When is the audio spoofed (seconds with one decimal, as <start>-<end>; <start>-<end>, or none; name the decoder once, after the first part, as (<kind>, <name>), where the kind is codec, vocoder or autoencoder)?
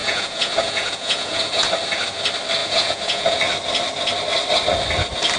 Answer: 0.0-1.7 (vocoder, Vocos); 2.6-3.4